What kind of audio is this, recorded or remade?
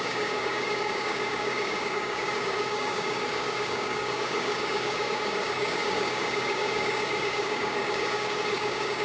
remade